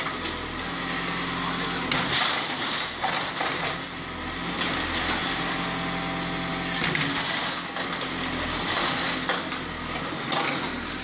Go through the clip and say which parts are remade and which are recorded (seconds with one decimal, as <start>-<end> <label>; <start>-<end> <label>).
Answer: 0.0-11.0 recorded